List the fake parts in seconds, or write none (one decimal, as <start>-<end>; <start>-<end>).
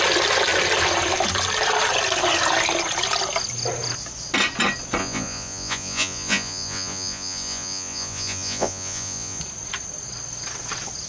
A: 5.0-9.4